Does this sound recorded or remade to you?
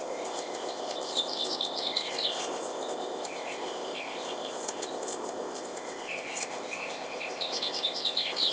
remade